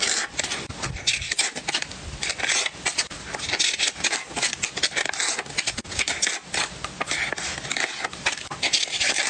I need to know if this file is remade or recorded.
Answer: recorded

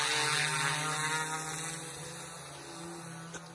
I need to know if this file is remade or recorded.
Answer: recorded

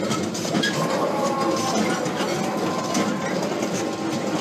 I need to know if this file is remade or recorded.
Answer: recorded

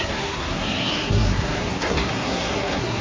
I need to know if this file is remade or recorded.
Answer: remade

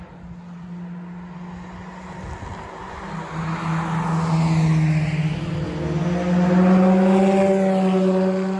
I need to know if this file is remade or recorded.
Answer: recorded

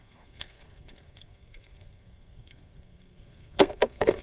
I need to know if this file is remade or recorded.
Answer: remade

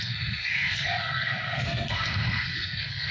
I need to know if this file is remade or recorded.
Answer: remade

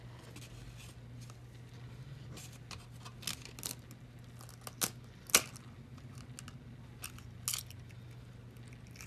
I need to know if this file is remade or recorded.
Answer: recorded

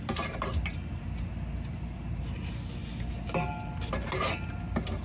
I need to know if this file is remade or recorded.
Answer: recorded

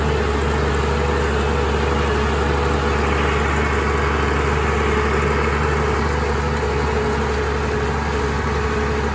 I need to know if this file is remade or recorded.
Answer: recorded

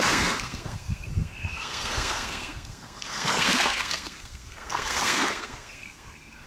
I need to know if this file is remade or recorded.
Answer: remade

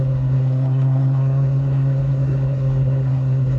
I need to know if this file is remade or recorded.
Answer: remade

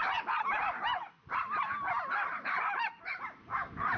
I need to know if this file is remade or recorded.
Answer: recorded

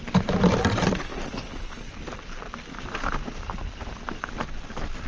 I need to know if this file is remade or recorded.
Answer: recorded